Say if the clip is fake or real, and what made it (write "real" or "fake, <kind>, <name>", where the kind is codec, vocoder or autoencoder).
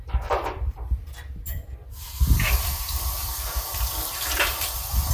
fake, vocoder, BigVGAN v2